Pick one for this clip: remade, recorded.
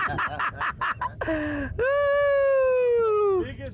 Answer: recorded